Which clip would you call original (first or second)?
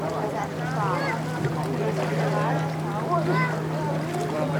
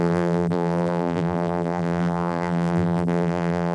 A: first